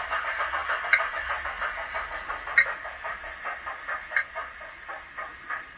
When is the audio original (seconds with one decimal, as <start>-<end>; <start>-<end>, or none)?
0.0-5.8